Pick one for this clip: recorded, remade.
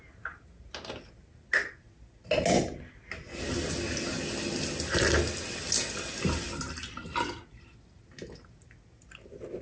recorded